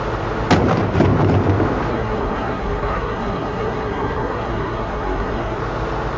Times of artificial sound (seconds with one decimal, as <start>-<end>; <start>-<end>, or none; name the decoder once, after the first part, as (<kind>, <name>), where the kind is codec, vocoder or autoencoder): 1.9-5.6 (codec, SNAC)